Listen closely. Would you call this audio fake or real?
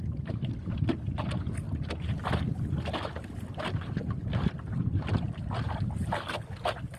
real